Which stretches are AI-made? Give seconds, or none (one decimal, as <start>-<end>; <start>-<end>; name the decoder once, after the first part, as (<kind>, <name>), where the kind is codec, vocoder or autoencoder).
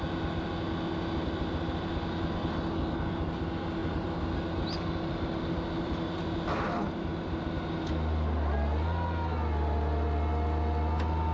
none